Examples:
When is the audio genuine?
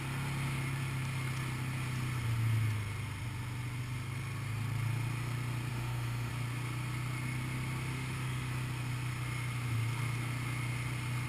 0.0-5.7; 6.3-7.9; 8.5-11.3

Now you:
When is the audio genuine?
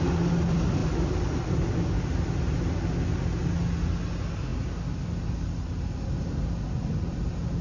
0.0-7.6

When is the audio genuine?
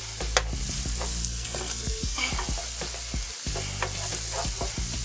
0.0-1.2; 2.3-5.0